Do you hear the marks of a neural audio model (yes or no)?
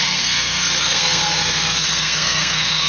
yes